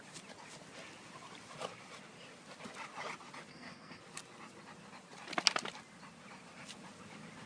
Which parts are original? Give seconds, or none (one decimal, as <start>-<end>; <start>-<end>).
0.0-3.5; 4.0-7.5